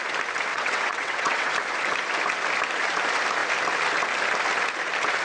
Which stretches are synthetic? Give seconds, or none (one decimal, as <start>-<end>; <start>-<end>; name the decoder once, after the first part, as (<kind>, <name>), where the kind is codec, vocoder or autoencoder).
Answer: 0.5-1.5 (vocoder, WaveNeXt)